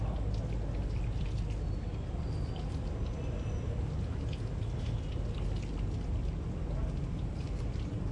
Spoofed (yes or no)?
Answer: no